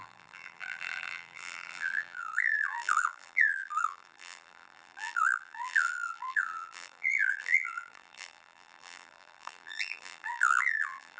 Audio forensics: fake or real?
fake